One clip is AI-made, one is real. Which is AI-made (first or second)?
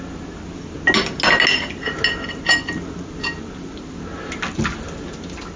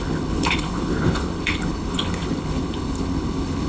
second